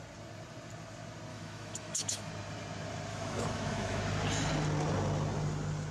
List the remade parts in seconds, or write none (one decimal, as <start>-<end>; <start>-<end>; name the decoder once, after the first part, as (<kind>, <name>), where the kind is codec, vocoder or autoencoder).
1.3-2.3 (autoencoder, DAC-VAE); 3.1-4.0